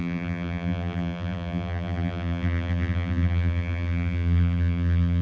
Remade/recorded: remade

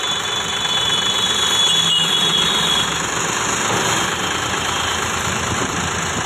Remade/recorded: recorded